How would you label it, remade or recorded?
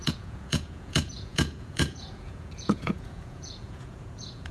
remade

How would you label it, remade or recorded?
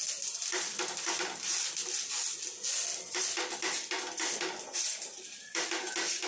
recorded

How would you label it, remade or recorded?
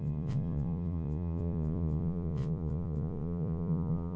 remade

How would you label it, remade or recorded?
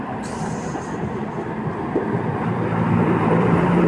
remade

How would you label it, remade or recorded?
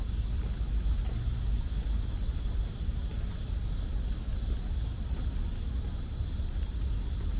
recorded